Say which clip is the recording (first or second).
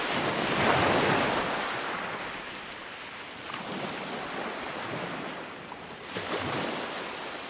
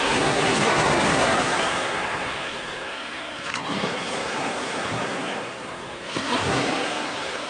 first